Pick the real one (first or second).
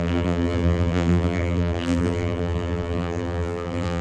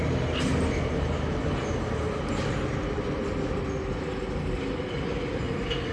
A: second